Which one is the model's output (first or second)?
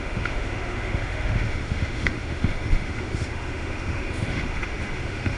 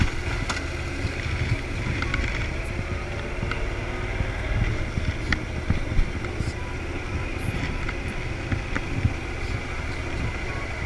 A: first